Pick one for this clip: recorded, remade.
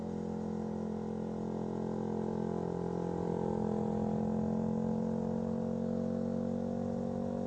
recorded